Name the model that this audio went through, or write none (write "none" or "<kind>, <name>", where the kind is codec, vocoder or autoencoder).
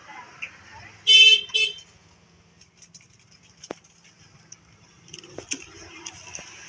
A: none